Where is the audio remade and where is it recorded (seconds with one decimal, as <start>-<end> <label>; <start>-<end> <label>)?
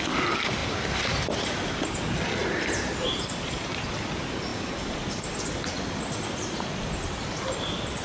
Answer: 0.0-0.6 recorded; 0.6-1.8 remade; 1.8-2.4 recorded; 2.4-3.9 remade; 3.9-8.0 recorded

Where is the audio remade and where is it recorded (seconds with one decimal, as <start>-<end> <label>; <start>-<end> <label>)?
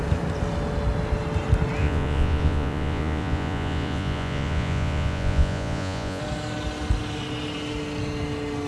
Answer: 0.0-1.8 recorded; 1.8-6.2 remade; 6.2-8.7 recorded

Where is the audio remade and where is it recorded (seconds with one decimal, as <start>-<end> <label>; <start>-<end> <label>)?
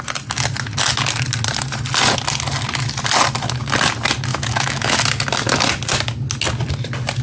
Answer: 0.0-4.3 recorded; 4.3-5.0 remade; 5.0-7.2 recorded